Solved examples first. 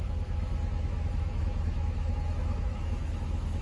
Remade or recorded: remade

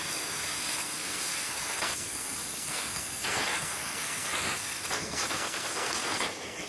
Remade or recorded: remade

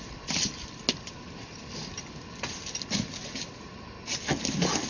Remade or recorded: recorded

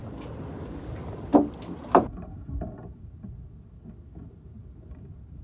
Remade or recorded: recorded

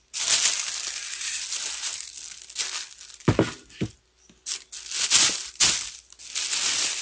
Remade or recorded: recorded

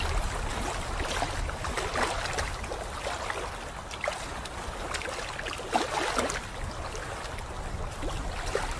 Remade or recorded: recorded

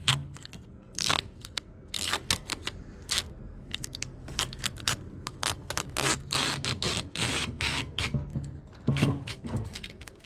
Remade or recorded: remade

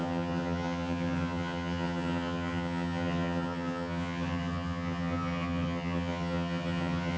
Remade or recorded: remade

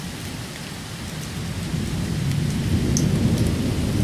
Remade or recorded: recorded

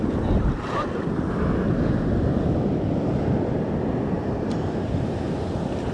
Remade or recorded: recorded